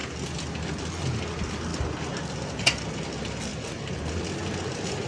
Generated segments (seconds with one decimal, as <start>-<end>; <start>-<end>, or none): none